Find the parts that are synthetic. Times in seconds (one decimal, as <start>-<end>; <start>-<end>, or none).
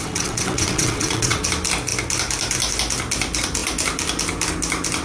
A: 0.0-1.4